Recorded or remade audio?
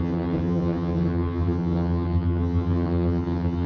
remade